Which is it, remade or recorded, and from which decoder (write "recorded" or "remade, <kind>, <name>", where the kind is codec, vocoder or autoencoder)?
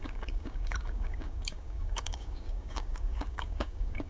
remade, codec, DAC